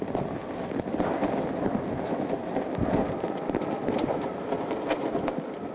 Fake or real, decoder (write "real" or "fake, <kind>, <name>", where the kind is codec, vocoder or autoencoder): real